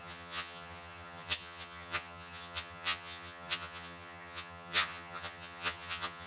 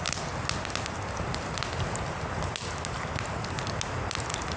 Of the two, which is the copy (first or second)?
first